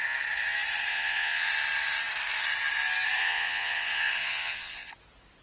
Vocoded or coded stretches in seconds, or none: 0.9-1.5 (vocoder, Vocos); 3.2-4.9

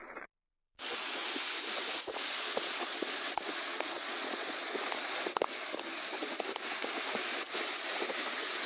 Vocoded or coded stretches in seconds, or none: 0.0-1.2 (vocoder, Vocos); 2.0-4.6

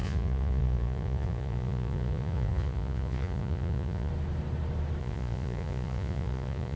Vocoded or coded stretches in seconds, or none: 0.0-4.1 (vocoder, Vocos); 5.0-6.8